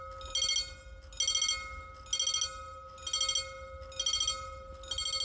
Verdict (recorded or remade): recorded